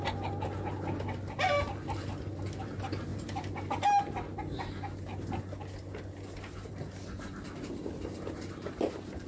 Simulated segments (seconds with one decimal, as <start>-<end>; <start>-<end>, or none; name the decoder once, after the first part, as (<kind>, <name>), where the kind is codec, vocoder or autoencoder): none